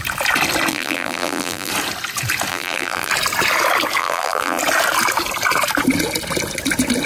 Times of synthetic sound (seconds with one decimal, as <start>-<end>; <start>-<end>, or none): 0.7-1.7; 2.5-3.1; 4.0-4.6